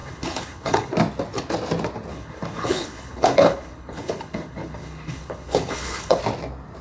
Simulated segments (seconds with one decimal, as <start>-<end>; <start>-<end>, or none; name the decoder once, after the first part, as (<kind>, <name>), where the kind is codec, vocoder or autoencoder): 0.0-0.9 (codec, HILCodec); 2.1-6.2